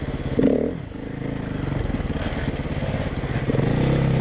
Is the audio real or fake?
real